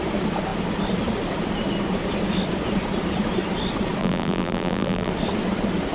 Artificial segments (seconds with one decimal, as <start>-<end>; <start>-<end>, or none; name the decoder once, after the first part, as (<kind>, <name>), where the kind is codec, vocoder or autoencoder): 4.0-5.1 (vocoder, BigVGAN v2)